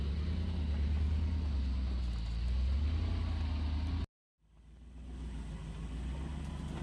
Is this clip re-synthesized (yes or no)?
no